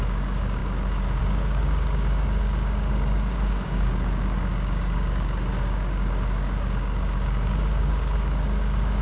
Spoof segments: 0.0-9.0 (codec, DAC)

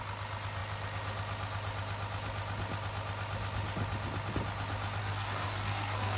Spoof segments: 5.0-6.2 (codec, DAC)

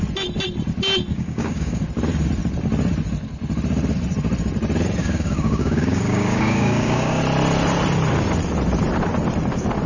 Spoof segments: 1.1-1.8 (codec, DAC); 5.0-7.2

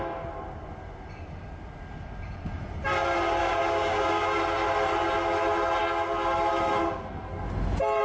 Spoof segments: 3.4-4.4 (codec, DAC)

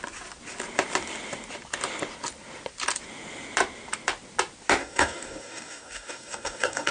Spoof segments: 4.8-6.9 (codec, DAC)

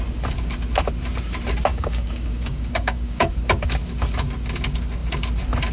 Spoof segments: 1.7-3.3 (codec, DAC)

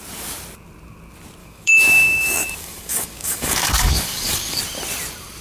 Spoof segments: 1.4-4.6 (codec, DAC)

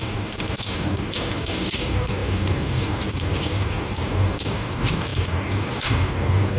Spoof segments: 0.0-6.6 (codec, DAC)